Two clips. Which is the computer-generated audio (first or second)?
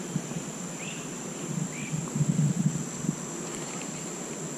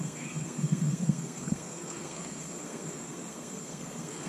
second